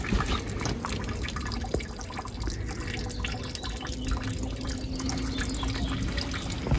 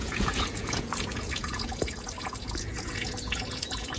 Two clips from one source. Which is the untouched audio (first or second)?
first